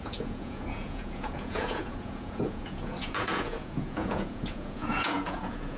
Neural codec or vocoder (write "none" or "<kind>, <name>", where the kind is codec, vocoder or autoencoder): vocoder, Vocos